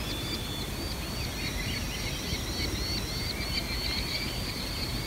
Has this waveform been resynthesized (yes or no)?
no